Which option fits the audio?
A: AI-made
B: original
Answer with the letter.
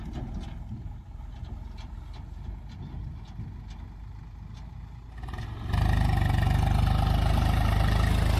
B